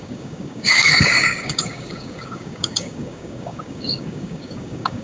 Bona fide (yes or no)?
no